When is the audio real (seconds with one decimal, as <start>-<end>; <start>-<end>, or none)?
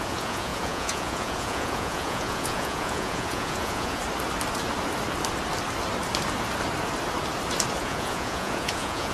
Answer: 4.0-7.8